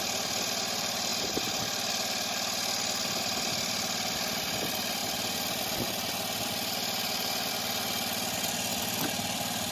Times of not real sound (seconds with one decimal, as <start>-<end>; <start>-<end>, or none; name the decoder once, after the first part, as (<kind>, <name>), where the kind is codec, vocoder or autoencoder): none